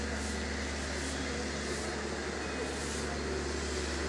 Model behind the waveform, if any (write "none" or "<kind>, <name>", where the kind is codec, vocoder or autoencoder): none